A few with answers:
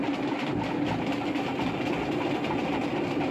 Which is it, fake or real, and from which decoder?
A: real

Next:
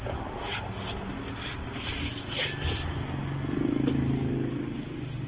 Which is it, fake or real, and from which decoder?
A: real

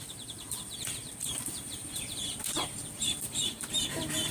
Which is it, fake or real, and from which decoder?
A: fake, vocoder, BigVGAN v2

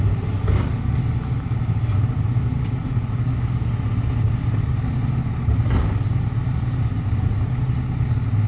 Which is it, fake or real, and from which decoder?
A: real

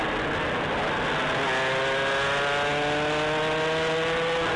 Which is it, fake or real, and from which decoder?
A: real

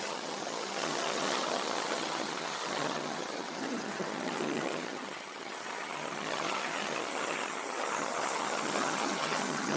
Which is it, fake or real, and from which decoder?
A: fake, vocoder, HiFi-GAN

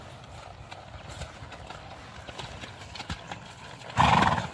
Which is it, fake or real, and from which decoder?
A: real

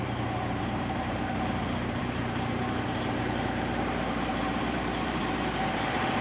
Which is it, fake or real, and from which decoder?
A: fake, vocoder, BigVGAN v2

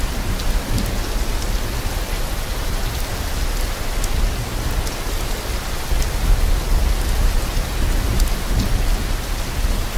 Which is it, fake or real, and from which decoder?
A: real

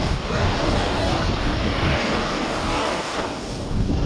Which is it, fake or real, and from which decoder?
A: fake, codec, DAC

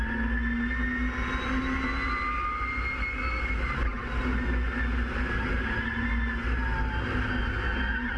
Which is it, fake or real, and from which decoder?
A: real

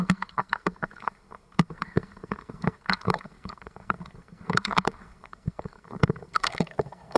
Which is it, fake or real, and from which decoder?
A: fake, codec, SNAC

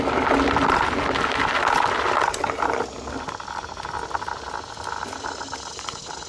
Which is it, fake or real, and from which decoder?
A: real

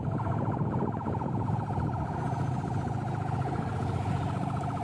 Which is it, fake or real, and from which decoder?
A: real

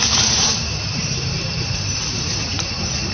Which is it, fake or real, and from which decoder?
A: fake, vocoder, BigVGAN v2